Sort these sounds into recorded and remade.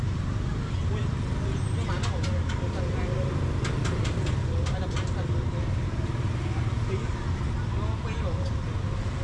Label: recorded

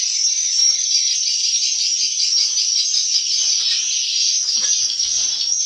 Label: recorded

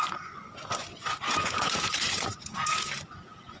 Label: remade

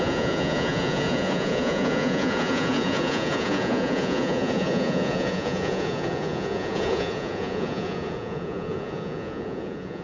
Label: remade